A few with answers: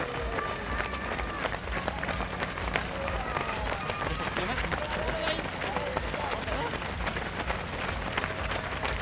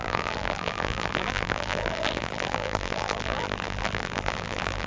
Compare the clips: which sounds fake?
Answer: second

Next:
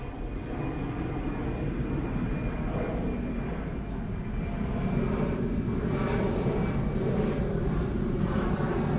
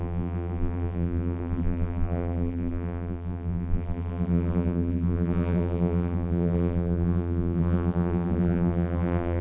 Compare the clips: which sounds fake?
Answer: second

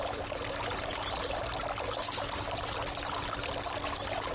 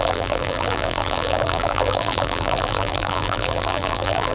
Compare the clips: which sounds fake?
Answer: second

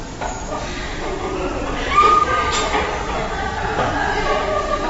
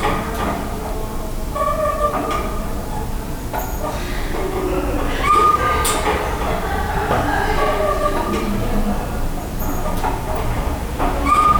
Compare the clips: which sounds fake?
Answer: first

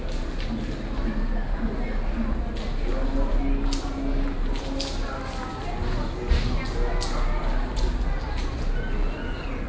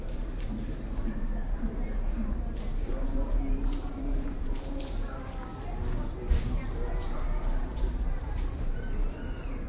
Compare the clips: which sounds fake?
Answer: second